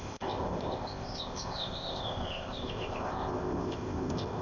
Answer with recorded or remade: remade